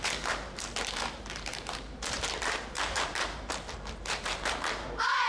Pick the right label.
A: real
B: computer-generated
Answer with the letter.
B